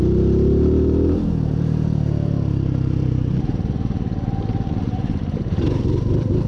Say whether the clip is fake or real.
fake